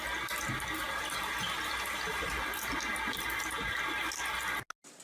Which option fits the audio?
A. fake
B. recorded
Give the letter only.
B